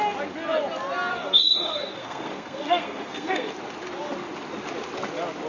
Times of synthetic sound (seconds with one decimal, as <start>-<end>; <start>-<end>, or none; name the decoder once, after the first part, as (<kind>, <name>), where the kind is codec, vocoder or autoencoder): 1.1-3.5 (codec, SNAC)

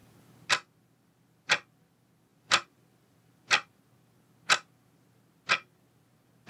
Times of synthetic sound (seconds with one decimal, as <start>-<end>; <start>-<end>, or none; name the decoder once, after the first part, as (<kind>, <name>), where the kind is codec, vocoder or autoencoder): 0.0-0.5 (vocoder, BigVGAN v2); 2.3-3.7

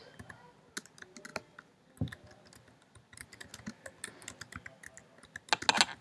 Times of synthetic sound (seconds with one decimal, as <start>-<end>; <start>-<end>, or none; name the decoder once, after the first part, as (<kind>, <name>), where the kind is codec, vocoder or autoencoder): none